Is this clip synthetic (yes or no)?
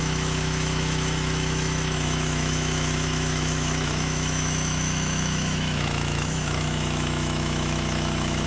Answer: yes